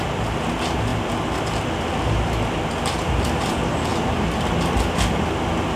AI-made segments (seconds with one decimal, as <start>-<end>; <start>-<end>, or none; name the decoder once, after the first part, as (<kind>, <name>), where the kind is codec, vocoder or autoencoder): none